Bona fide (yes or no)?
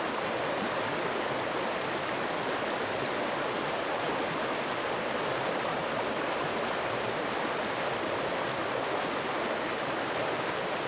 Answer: yes